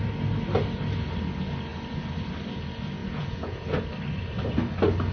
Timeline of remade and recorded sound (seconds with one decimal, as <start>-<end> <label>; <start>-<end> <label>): 0.0-3.0 recorded; 3.0-3.8 remade; 3.8-5.1 recorded